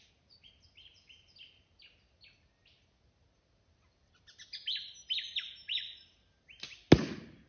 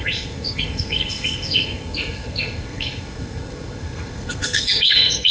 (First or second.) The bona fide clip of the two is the first